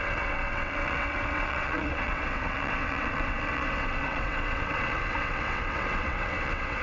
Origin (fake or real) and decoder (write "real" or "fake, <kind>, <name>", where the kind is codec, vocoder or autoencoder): fake, vocoder, WaveNeXt